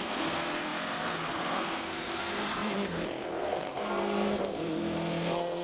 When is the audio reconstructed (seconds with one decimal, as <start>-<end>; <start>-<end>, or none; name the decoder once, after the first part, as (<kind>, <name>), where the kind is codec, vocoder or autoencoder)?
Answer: 0.0-5.6 (codec, SNAC)